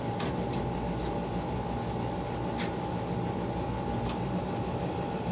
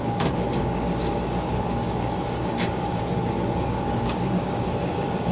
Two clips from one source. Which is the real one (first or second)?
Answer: first